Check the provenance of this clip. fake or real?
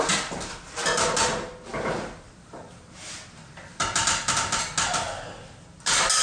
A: real